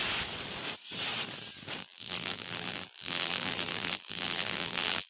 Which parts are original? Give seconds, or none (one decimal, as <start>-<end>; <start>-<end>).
0.0-1.8